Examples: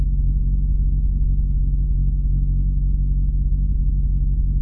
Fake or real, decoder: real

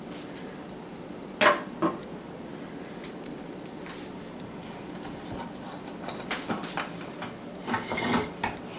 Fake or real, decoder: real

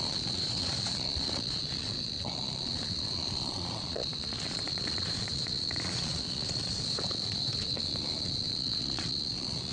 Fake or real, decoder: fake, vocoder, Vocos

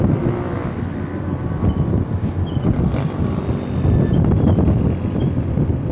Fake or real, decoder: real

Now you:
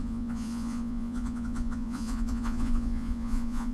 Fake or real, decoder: fake, vocoder, Vocos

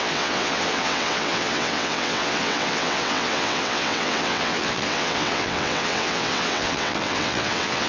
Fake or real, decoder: fake, vocoder, WaveNeXt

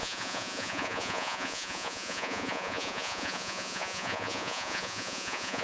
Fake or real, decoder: fake, vocoder, Vocos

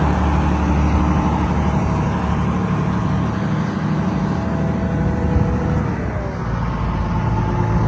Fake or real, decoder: real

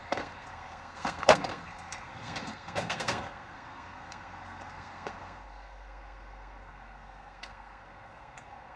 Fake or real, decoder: fake, codec, SNAC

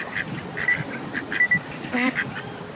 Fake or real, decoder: real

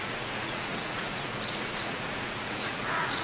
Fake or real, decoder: fake, vocoder, Vocos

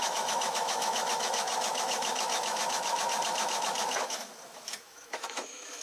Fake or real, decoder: fake, autoencoder, DAC-VAE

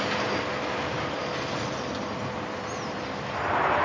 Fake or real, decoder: real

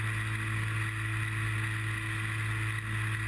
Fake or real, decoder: real